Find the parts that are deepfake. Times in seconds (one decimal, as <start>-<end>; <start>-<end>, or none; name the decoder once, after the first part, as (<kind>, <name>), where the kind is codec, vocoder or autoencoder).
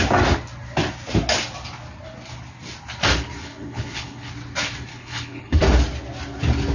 3.4-4.3 (codec, HILCodec); 4.9-5.6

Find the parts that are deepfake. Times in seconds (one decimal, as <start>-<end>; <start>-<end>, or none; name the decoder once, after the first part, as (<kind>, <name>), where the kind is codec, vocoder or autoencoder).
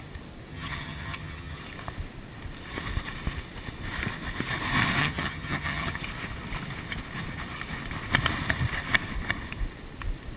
0.5-1.6 (vocoder, HiFi-GAN); 5.0-6.0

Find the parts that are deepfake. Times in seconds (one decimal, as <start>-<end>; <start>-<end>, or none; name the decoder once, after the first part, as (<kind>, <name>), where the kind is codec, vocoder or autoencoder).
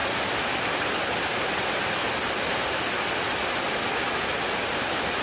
none